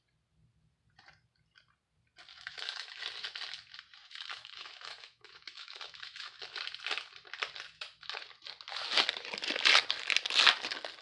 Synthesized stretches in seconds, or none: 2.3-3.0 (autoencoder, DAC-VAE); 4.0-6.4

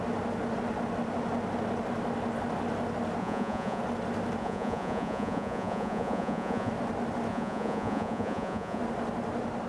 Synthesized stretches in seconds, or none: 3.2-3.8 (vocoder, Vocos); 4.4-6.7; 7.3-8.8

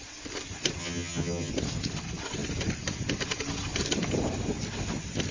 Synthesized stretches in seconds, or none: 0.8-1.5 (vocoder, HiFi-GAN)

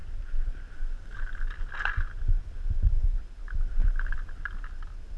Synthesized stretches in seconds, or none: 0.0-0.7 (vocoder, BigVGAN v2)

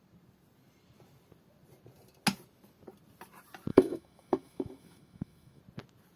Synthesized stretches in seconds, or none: 3.7-5.6 (autoencoder, DAC-VAE)

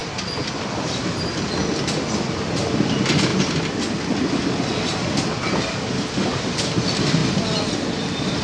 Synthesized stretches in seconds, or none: none

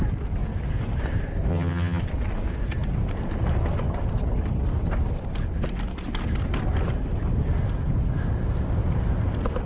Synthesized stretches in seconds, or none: 1.5-2.0 (vocoder, HiFi-GAN)

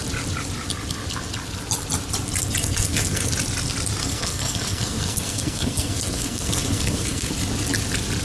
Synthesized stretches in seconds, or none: 2.6-3.3 (codec, SNAC); 4.0-7.3